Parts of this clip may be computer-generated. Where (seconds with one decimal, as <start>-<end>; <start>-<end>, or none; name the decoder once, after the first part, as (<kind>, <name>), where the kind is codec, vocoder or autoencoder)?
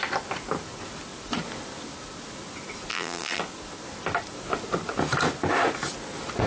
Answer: 2.9-3.4 (vocoder, BigVGAN v2)